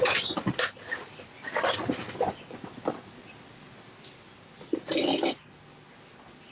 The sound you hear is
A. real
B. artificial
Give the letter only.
A